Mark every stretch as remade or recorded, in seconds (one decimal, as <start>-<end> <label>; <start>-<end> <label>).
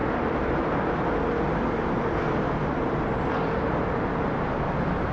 0.0-0.6 remade; 0.6-5.1 recorded